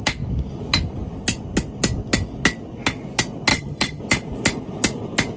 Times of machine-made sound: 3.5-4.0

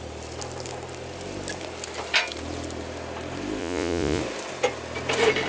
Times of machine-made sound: 3.6-4.2

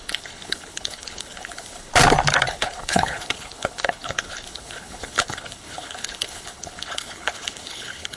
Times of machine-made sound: 0.0-1.9; 2.5-8.2

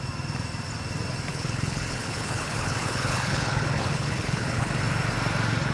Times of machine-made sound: 1.3-4.7

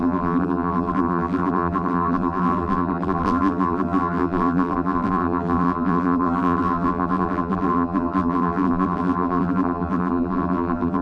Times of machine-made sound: 0.0-11.0